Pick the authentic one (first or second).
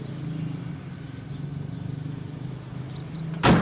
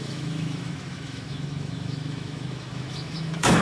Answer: first